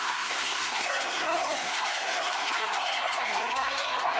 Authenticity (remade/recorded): remade